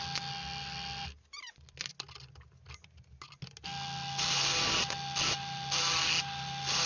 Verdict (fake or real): real